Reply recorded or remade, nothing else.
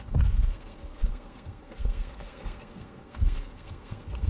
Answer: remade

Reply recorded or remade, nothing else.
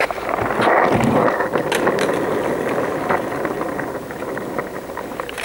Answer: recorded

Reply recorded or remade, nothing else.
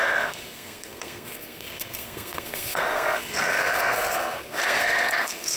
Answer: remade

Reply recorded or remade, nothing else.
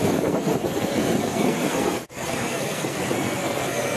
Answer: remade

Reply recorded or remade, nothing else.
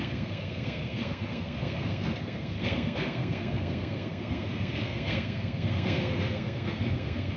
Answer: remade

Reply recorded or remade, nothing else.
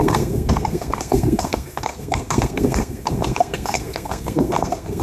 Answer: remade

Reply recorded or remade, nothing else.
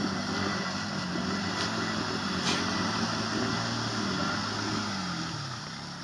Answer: recorded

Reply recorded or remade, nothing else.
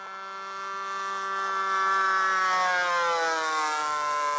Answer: recorded